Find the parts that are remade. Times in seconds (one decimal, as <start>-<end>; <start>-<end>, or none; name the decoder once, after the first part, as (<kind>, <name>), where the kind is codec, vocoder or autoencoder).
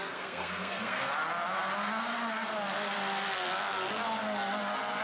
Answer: 0.0-1.1 (codec, SNAC)